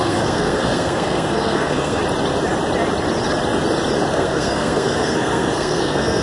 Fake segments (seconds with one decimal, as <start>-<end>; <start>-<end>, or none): 0.0-2.0; 4.1-6.2